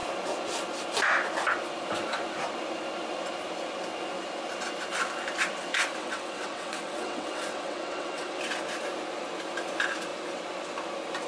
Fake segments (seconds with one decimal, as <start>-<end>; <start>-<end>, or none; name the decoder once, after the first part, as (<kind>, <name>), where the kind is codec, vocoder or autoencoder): 6.0-8.4 (vocoder, WaveNeXt)